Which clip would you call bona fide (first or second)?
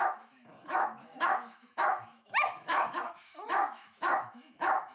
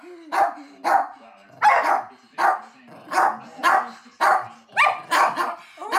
second